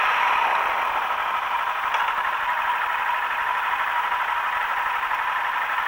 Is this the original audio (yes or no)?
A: yes